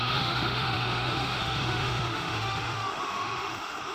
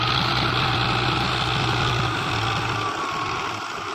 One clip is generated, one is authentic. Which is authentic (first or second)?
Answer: second